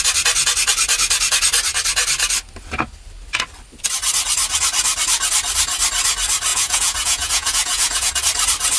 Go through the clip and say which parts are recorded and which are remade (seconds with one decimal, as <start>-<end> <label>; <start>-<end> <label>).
0.0-6.5 recorded; 6.5-8.1 remade; 8.1-8.8 recorded